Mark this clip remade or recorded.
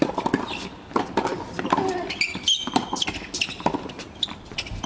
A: recorded